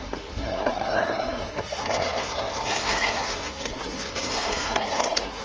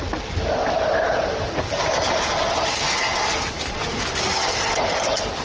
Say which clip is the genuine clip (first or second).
second